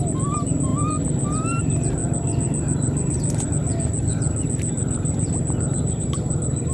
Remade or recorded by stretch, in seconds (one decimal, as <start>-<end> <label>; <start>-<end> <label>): 0.0-6.7 recorded